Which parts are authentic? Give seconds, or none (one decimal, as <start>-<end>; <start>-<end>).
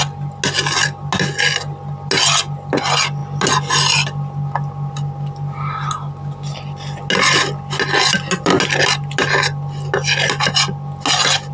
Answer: 0.0-11.5